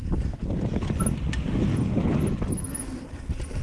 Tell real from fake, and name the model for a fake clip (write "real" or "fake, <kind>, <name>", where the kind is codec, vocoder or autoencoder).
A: real